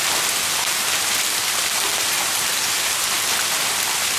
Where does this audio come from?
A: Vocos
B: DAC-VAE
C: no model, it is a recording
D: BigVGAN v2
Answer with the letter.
C